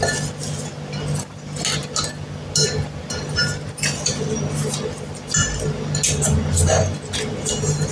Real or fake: real